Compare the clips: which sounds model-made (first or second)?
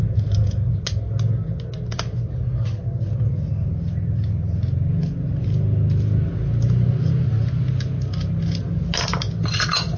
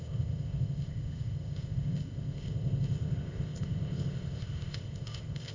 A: second